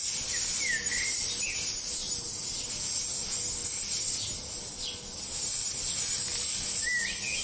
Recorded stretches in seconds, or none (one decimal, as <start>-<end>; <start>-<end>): 0.0-2.0; 2.6-7.4